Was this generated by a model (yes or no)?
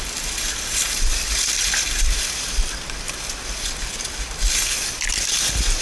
no